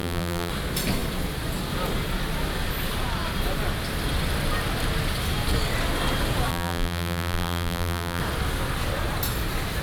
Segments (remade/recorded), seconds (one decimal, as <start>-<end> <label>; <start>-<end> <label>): 0.0-0.5 remade; 0.5-6.5 recorded; 6.5-8.2 remade; 8.2-9.8 recorded